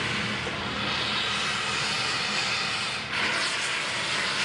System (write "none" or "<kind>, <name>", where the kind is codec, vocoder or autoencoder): none